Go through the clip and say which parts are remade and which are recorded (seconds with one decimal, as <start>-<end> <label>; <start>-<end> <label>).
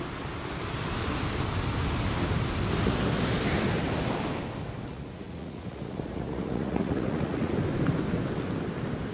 0.0-4.9 recorded; 4.9-7.5 remade; 7.5-9.1 recorded